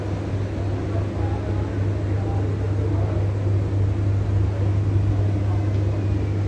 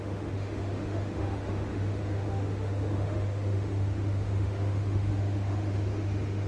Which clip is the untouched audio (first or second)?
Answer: first